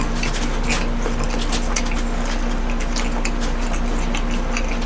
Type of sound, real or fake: real